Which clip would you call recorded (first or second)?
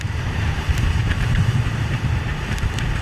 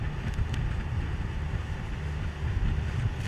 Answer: second